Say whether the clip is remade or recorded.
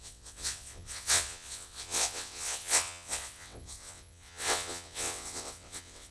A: remade